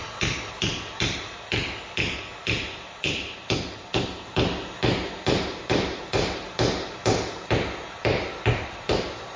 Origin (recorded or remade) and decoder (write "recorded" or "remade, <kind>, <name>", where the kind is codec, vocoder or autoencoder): remade, vocoder, BigVGAN v2